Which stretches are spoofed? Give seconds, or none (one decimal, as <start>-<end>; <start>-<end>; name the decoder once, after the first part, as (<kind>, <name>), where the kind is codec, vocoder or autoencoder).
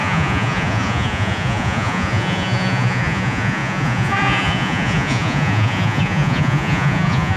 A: 0.0-7.4 (vocoder, Vocos)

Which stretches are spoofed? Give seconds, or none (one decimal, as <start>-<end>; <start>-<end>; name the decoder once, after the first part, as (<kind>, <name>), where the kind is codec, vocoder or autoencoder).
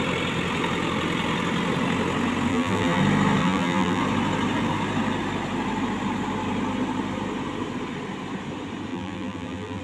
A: 2.5-3.0 (vocoder, BigVGAN v2); 3.4-4.0; 8.9-9.8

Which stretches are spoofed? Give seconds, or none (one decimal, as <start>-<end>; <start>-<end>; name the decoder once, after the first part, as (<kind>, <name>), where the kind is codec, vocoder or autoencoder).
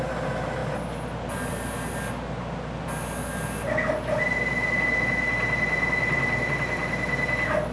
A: none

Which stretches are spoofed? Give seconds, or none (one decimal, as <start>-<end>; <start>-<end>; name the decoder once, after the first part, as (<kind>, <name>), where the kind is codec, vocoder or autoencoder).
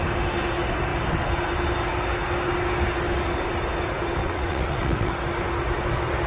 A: 4.2-5.1 (vocoder, WaveNeXt)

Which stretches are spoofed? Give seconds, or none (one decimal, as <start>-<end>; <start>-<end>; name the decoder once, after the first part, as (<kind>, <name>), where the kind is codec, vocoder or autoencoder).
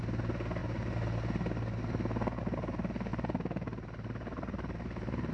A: 3.1-5.3 (vocoder, BigVGAN v2)